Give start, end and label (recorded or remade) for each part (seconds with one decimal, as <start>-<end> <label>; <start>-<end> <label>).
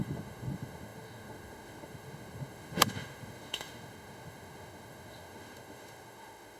0.0-6.6 remade